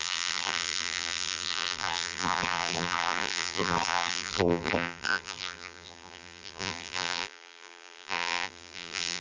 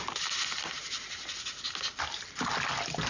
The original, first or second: second